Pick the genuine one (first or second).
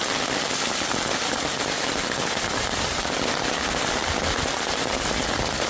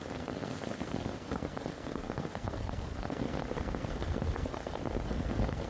first